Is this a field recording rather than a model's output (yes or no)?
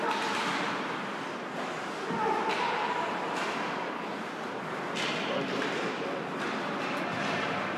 no